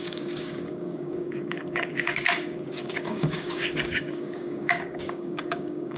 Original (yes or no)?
no